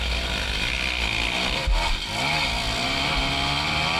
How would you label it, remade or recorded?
recorded